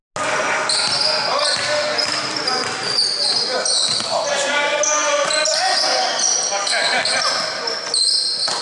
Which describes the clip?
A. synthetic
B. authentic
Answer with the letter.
B